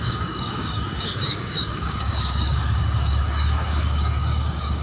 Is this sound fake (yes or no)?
yes